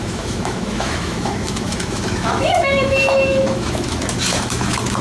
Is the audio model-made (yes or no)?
yes